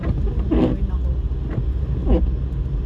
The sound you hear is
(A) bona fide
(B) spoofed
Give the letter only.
A